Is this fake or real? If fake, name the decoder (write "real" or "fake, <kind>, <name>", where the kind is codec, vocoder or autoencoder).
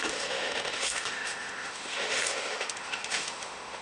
fake, autoencoder, DAC-VAE